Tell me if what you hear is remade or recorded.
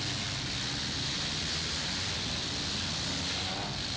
recorded